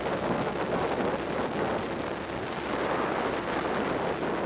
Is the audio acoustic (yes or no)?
yes